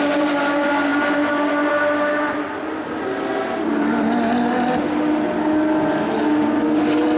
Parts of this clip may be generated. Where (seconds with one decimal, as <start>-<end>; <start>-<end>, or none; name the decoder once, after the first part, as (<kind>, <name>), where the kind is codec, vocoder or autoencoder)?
none

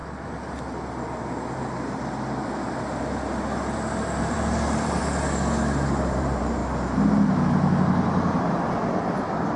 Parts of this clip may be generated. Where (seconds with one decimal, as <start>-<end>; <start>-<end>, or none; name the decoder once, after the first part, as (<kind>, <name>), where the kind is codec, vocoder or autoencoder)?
4.2-5.0 (vocoder, BigVGAN v2); 6.0-6.6

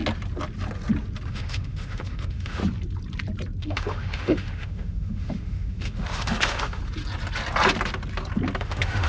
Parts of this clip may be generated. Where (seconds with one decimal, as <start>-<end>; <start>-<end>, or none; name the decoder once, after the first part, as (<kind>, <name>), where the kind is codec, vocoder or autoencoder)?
1.3-2.6 (autoencoder, DAC-VAE); 3.6-6.8; 8.6-9.1

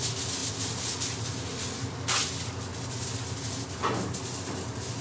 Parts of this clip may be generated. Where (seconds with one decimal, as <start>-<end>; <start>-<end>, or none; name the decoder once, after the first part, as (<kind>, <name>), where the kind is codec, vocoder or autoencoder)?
none

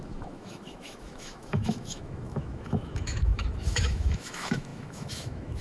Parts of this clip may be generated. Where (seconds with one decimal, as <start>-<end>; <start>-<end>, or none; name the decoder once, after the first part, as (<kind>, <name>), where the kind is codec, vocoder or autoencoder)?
0.0-5.6 (autoencoder, DAC-VAE)

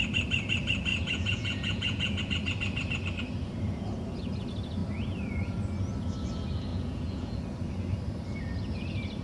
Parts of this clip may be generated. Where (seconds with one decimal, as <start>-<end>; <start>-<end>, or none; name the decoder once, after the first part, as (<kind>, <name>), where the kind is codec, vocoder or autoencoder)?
0.9-2.2 (vocoder, Vocos); 6.7-7.4